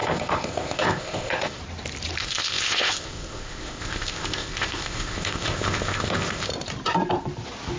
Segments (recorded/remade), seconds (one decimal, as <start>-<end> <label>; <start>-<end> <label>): 0.0-1.6 remade; 1.6-2.2 recorded; 2.2-6.5 remade; 6.5-7.8 recorded